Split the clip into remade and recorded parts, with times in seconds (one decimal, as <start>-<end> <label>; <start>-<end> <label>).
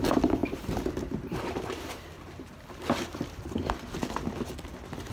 0.0-0.4 recorded; 0.4-3.4 remade; 3.4-5.1 recorded